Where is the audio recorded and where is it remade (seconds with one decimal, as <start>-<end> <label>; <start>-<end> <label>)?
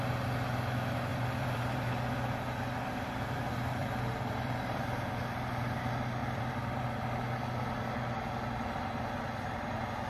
0.0-1.1 recorded; 1.1-1.9 remade; 1.9-3.8 recorded; 3.8-4.8 remade; 4.8-6.2 recorded; 6.2-6.8 remade; 6.8-10.1 recorded